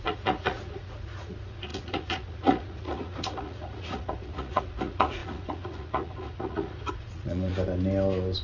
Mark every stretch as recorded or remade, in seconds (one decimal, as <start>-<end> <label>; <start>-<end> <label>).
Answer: 0.0-7.5 remade; 7.5-8.4 recorded